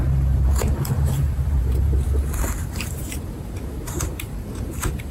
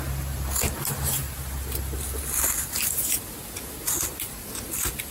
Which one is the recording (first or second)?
second